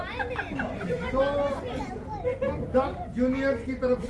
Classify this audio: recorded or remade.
recorded